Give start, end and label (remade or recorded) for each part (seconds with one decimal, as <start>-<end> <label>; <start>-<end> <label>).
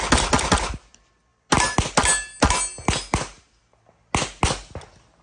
0.0-5.2 recorded